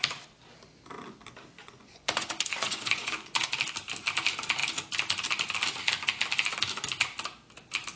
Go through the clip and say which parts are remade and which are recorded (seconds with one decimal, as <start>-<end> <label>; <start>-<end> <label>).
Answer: 0.0-1.6 recorded; 1.6-3.4 remade; 3.4-8.0 recorded